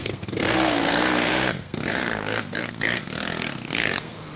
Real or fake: fake